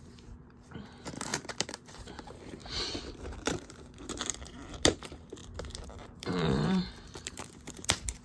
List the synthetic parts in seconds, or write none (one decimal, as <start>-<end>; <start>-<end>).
0.0-2.6; 3.1-8.2